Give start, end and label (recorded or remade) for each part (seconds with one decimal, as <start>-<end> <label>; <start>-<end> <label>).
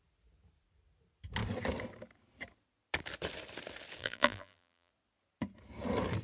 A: 0.0-4.0 recorded; 4.0-4.9 remade; 4.9-6.2 recorded